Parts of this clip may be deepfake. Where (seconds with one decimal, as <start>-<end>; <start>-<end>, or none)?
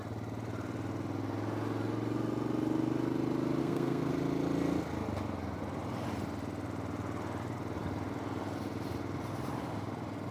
3.6-4.1